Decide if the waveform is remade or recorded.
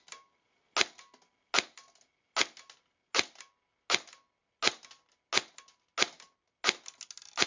recorded